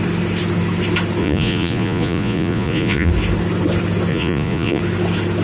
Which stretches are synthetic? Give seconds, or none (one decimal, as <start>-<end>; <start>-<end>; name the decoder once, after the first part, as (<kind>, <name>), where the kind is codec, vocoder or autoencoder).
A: 1.2-3.1 (vocoder, Vocos); 4.1-4.8